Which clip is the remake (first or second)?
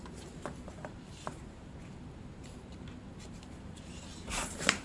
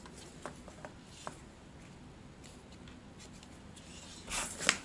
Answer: first